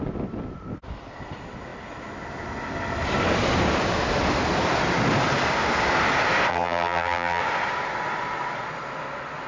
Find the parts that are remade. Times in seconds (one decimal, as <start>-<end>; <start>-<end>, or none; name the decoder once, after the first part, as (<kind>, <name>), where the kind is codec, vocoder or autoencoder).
6.5-7.4 (vocoder, BigVGAN v2)